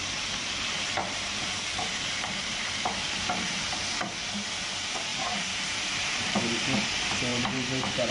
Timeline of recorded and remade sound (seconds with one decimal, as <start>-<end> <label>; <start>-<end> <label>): 0.0-1.0 recorded; 1.0-3.9 remade; 3.9-5.1 recorded; 5.1-6.4 remade; 6.4-7.3 recorded; 7.3-8.1 remade